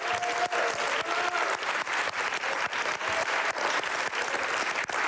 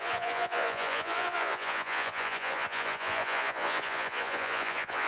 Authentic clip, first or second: first